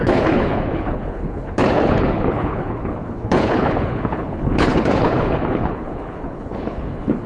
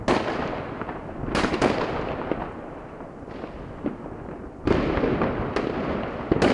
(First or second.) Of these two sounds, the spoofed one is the first